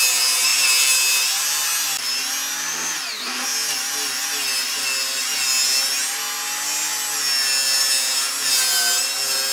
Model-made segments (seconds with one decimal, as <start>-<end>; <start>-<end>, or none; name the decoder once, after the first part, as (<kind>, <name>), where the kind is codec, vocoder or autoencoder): none